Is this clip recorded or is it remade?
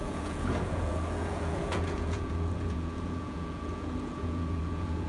remade